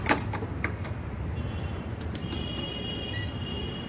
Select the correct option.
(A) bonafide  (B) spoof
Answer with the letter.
B